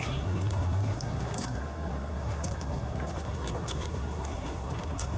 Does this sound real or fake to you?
fake